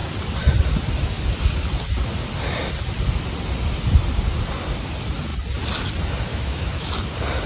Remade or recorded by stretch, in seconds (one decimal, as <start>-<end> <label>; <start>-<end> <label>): 0.0-6.3 recorded; 6.3-6.9 remade; 6.9-7.5 recorded